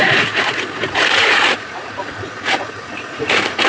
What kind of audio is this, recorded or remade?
remade